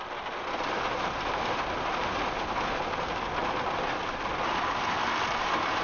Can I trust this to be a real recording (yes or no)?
yes